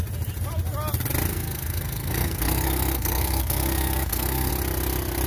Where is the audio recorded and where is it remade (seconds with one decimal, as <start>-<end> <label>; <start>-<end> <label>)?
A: 0.0-1.3 recorded; 1.3-4.5 remade; 4.5-5.3 recorded